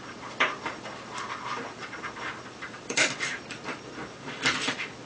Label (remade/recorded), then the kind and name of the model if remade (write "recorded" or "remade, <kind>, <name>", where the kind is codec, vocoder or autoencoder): remade, vocoder, BigVGAN v2